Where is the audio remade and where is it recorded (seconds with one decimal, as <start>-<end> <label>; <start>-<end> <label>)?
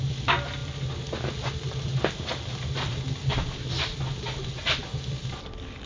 0.0-5.9 recorded